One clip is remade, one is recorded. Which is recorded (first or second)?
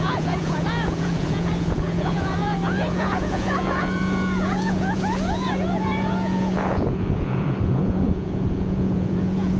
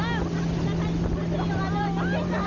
second